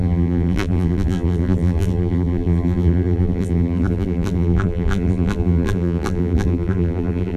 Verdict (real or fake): fake